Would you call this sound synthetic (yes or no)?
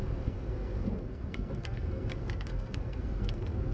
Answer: yes